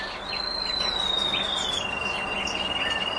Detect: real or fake real